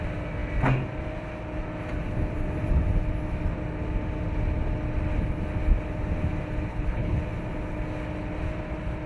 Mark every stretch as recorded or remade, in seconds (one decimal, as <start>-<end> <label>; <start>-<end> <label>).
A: 0.0-6.7 recorded; 6.7-7.2 remade; 7.2-9.1 recorded